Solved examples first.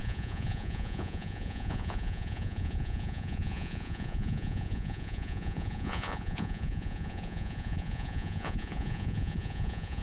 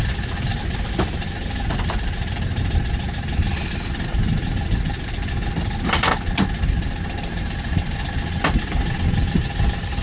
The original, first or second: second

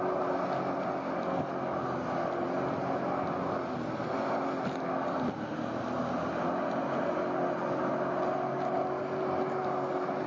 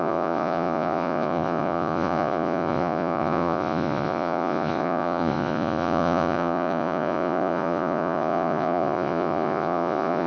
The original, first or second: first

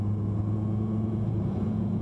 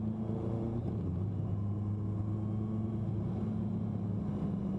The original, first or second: second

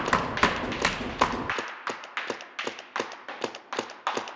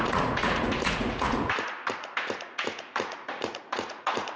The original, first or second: first